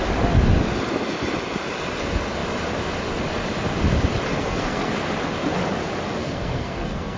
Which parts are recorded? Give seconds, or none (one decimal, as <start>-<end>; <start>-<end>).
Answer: 0.0-4.3; 4.9-6.2